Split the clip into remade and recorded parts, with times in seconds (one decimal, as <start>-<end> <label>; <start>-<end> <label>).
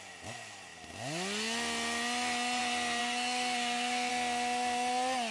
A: 0.0-3.0 recorded; 3.0-4.1 remade; 4.1-5.3 recorded